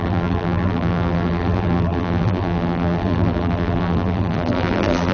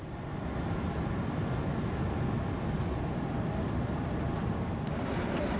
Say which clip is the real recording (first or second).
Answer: second